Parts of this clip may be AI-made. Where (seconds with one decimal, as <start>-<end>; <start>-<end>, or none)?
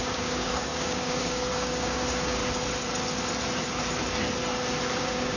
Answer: 0.0-2.4; 5.0-5.4